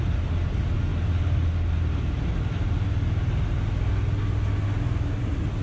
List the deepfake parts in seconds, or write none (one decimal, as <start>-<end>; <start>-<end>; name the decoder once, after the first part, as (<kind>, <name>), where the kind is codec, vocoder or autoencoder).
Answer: none